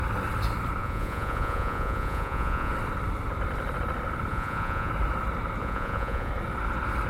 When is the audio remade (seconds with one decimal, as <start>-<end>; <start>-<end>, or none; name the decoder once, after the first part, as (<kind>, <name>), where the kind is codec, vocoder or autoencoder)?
0.8-2.7 (vocoder, Vocos); 4.3-4.9; 5.6-6.3